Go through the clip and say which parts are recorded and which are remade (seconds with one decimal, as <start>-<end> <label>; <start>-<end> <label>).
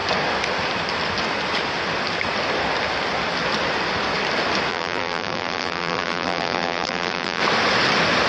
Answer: 0.0-4.7 recorded; 4.7-7.4 remade; 7.4-8.3 recorded